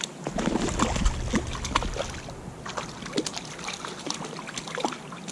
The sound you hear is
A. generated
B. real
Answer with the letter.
B